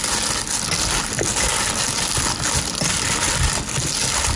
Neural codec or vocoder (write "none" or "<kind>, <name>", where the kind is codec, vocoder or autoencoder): none